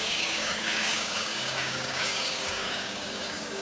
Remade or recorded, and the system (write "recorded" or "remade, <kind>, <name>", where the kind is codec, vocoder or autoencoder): remade, codec, DAC